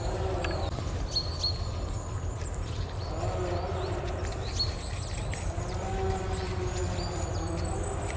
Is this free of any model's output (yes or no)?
yes